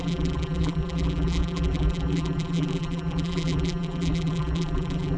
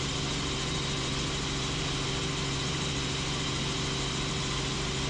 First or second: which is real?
second